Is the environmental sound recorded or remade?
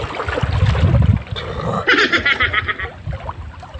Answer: recorded